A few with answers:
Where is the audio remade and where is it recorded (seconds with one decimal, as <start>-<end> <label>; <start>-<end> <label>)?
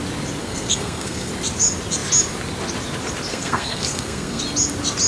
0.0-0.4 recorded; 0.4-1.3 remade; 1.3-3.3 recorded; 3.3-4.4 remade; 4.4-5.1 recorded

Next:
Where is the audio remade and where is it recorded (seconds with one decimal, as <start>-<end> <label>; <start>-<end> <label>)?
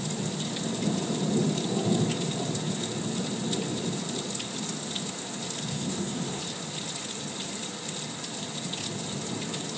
0.0-5.7 recorded; 5.7-6.4 remade; 6.4-9.8 recorded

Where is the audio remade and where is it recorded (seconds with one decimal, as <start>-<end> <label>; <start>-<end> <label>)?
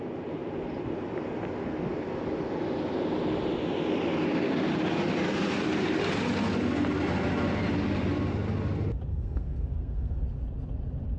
0.0-9.1 recorded; 9.1-10.2 remade; 10.2-11.2 recorded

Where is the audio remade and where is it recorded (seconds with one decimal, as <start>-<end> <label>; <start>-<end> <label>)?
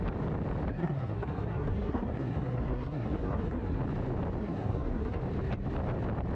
0.0-0.7 recorded; 0.7-3.8 remade; 3.8-4.4 recorded; 4.4-5.2 remade; 5.2-6.3 recorded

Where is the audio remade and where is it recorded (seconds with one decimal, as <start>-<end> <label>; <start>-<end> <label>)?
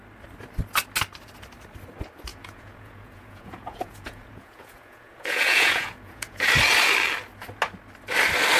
0.0-2.3 recorded; 2.3-6.5 remade; 6.5-8.6 recorded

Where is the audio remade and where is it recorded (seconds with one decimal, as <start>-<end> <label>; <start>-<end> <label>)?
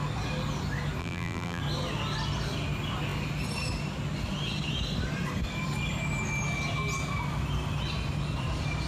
0.0-1.0 recorded; 1.0-1.6 remade; 1.6-8.9 recorded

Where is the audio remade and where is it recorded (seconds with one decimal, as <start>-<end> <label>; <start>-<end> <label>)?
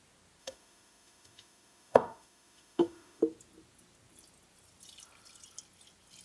0.0-0.4 recorded; 0.4-3.2 remade; 3.2-6.2 recorded